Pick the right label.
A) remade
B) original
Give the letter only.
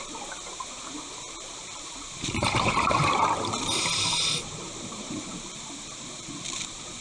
A